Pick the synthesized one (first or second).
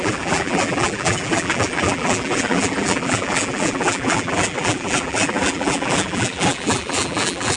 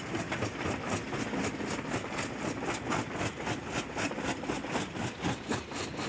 first